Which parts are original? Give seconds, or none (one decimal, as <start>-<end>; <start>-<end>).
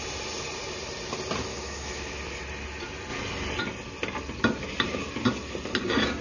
0.0-1.5; 2.2-6.2